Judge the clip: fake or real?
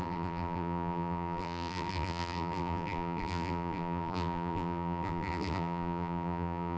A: fake